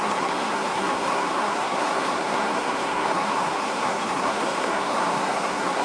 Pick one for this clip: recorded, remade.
remade